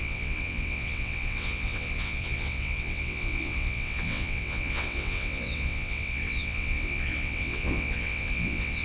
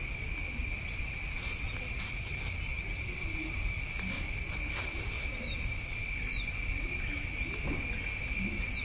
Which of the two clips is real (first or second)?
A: second